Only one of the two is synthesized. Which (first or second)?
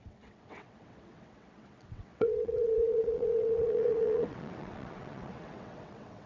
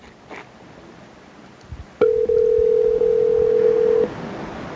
first